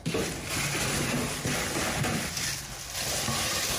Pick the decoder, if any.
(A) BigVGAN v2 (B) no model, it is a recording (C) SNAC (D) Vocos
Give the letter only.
B